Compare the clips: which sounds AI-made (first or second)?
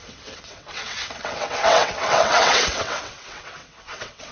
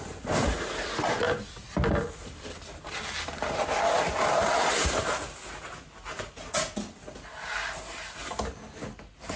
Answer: first